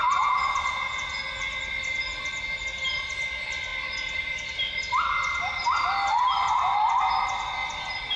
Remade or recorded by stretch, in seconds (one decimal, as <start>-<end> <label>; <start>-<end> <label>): 0.0-1.1 remade; 1.1-8.2 recorded